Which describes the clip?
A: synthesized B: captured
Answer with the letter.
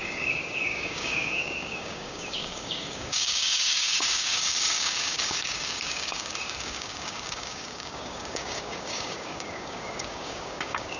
A